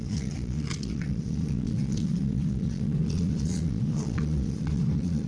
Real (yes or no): no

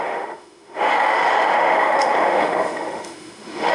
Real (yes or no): no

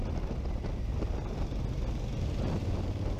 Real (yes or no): yes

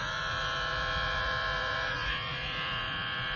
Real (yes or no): no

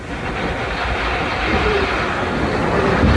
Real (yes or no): yes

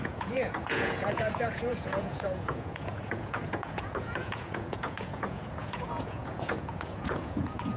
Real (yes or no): no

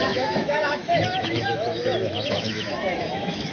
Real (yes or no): no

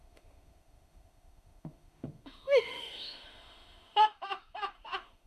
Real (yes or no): no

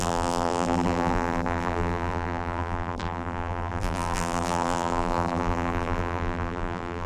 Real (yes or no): no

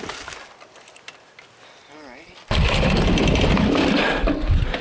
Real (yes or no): yes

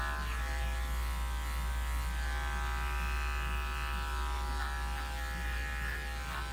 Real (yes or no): yes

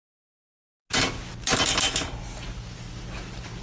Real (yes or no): yes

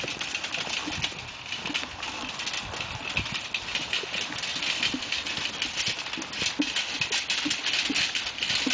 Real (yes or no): yes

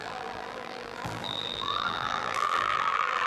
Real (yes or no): no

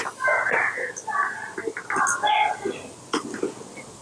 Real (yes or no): yes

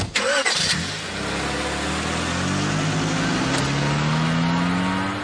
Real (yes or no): yes